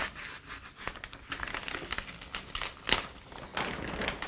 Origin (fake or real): real